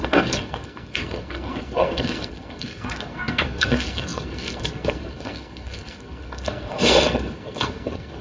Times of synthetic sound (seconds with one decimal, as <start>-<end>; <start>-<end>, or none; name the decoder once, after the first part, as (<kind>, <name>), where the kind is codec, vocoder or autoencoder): 0.0-8.2 (codec, SNAC)